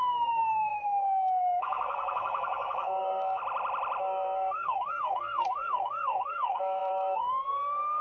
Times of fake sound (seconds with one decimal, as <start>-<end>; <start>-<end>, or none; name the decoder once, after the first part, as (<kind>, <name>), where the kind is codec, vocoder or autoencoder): 0.0-3.4 (codec, SNAC); 4.0-8.0